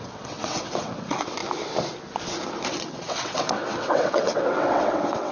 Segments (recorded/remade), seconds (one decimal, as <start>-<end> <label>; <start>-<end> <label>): 0.0-1.4 remade; 1.4-2.7 recorded; 2.7-5.3 remade